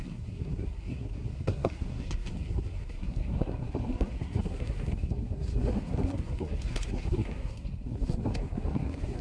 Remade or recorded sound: remade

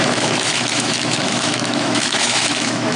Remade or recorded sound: remade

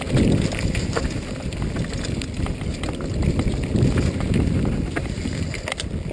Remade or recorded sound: recorded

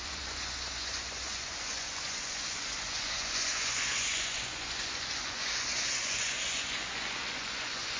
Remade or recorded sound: remade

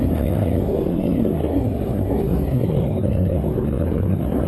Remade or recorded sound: remade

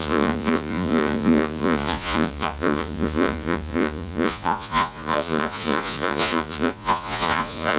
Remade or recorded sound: remade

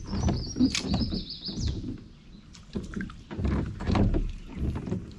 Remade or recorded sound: recorded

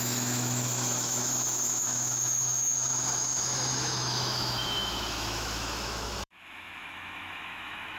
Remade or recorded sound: remade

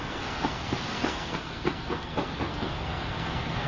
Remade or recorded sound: remade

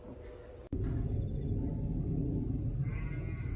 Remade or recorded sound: recorded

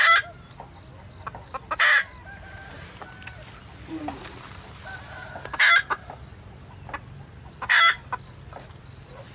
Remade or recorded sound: recorded